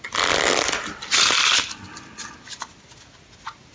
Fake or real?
real